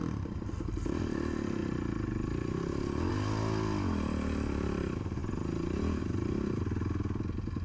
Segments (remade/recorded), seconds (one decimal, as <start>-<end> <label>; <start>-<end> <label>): 0.0-7.6 recorded